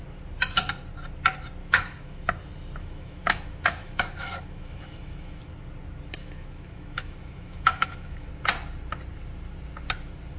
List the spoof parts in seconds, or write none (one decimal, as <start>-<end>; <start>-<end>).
1.6-2.2; 2.8-5.4; 6.2-8.3